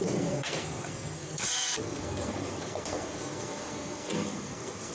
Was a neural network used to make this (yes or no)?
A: yes